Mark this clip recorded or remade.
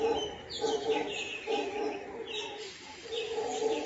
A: remade